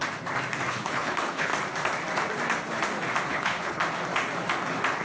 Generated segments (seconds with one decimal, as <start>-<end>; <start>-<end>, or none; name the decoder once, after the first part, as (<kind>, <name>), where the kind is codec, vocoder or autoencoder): 0.7-1.5 (codec, HILCodec); 3.3-3.8